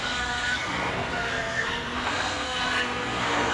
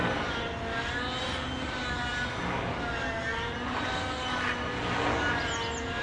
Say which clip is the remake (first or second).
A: first